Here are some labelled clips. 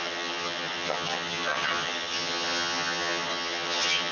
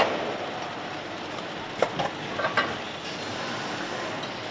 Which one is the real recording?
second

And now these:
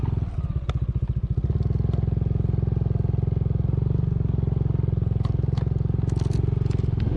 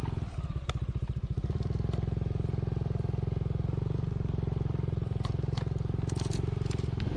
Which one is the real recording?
first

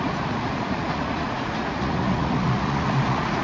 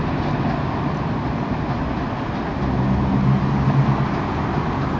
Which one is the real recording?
second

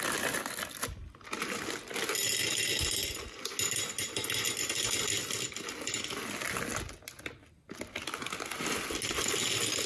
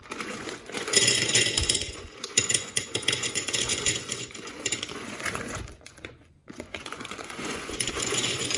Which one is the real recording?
first